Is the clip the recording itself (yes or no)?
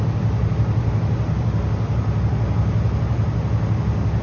yes